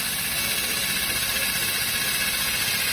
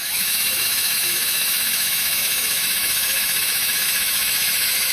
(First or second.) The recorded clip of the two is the first